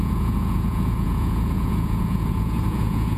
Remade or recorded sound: remade